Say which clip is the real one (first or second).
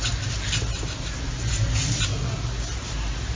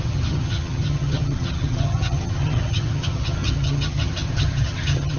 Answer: first